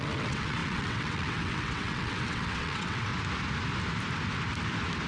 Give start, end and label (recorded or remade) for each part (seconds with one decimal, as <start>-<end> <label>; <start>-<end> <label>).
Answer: 0.0-3.1 remade; 3.1-5.1 recorded